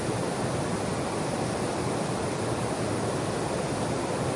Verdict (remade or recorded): recorded